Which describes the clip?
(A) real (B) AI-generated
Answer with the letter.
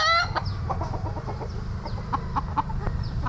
A